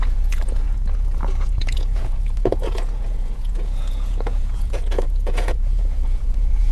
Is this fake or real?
fake